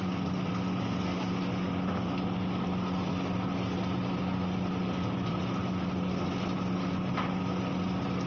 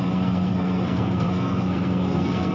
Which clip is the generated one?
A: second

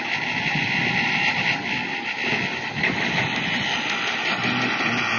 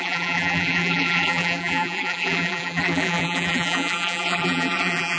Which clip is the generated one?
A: second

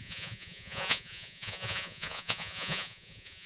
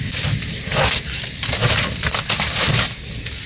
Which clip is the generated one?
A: first